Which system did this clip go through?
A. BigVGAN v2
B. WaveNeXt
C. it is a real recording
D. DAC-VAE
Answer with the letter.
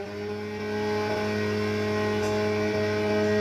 C